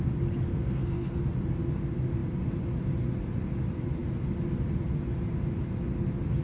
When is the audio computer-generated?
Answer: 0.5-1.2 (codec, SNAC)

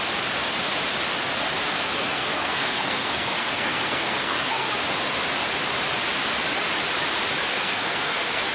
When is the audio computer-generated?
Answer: 1.7-4.7 (codec, SNAC); 7.5-8.5

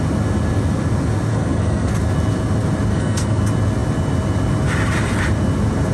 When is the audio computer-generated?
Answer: 1.3-2.0 (codec, SNAC); 2.9-3.4

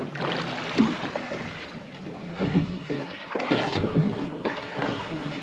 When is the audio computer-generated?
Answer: 2.3-5.4 (codec, SNAC)

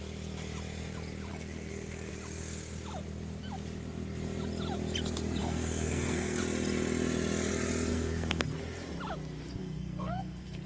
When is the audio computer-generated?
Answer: 1.3-2.1 (codec, SNAC); 5.4-6.4; 7.9-8.4; 9.6-10.7

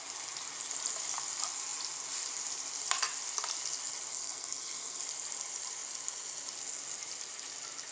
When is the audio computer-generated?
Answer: 4.1-5.0 (codec, SNAC)